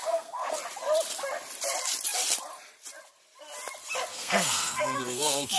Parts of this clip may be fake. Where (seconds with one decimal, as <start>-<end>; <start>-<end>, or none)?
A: 0.0-0.6; 4.1-5.6

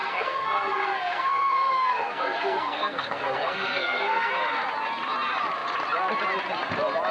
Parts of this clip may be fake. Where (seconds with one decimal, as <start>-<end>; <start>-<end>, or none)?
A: 0.0-4.3

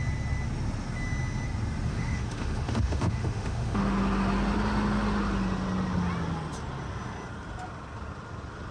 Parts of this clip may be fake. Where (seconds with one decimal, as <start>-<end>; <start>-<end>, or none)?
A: 1.9-3.8